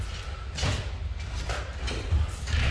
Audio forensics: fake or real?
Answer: real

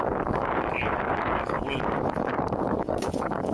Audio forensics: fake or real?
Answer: fake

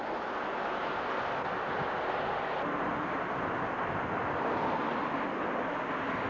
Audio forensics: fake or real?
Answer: real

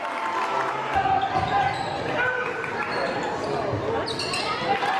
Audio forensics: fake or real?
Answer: real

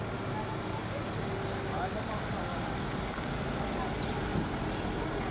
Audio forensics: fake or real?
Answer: real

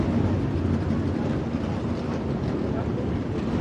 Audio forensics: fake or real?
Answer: real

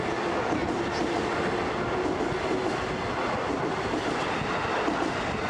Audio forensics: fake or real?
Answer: real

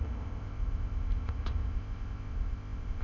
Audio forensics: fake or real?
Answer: fake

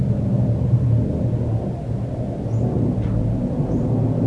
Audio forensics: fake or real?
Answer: real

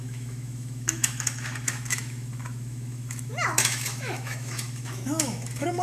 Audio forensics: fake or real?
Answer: fake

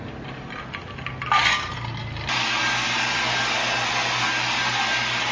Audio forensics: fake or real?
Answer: real